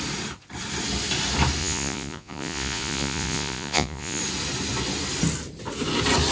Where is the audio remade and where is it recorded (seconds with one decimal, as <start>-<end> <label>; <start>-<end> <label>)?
0.0-1.6 recorded; 1.6-4.2 remade; 4.2-6.3 recorded